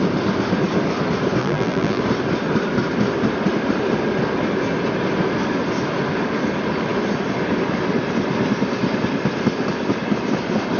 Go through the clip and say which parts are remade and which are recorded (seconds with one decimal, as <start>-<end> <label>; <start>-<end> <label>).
0.0-1.4 recorded; 1.4-2.0 remade; 2.0-10.8 recorded